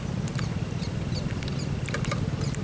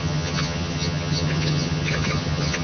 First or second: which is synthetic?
second